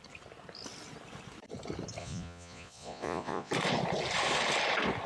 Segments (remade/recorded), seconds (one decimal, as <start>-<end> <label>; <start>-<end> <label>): 0.0-2.0 recorded; 2.0-3.5 remade; 3.5-5.1 recorded